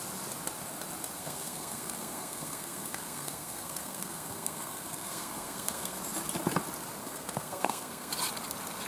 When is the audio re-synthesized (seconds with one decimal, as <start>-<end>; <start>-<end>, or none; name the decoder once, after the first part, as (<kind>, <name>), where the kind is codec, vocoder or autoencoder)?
1.2-6.0 (codec, SNAC); 7.0-8.1